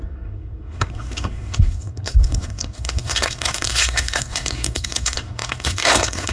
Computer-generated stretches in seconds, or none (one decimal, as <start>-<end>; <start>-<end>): 0.0-6.3